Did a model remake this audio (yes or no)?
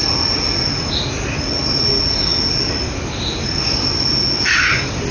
no